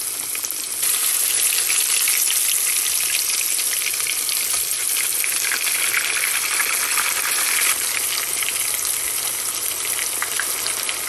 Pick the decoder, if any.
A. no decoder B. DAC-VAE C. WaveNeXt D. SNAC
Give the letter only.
A